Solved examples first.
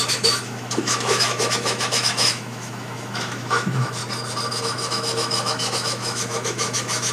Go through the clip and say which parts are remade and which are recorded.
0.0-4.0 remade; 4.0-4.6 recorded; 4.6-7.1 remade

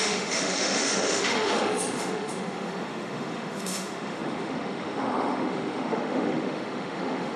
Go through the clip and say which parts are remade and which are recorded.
0.0-7.4 remade

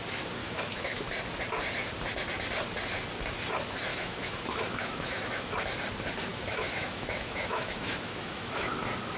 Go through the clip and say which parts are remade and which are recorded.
0.0-0.4 recorded; 0.4-1.0 remade; 1.0-3.9 recorded; 3.9-5.6 remade; 5.6-6.3 recorded; 6.3-8.7 remade; 8.7-9.2 recorded